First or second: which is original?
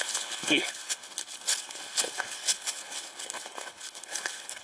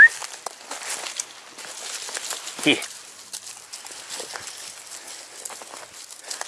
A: second